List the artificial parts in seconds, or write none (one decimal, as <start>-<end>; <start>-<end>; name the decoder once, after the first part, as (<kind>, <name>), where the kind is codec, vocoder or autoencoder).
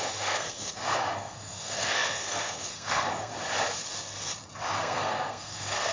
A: 0.0-3.3 (codec, SNAC); 4.8-5.9